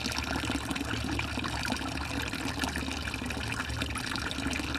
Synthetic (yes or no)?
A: no